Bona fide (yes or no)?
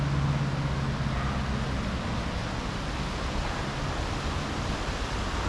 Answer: yes